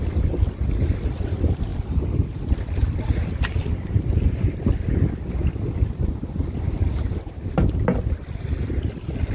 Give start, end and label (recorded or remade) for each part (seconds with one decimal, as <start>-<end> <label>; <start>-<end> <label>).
0.0-9.3 recorded